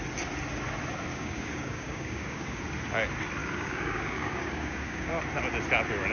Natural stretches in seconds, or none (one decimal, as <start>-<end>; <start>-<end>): 0.0-1.1; 2.6-3.4; 5.2-6.1